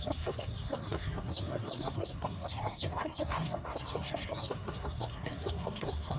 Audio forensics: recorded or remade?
remade